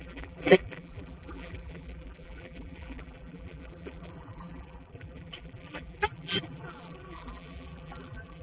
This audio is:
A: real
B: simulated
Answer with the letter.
B